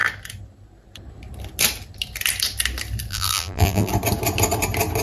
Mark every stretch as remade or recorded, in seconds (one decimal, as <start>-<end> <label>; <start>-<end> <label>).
0.0-3.1 recorded; 3.1-3.9 remade; 3.9-5.0 recorded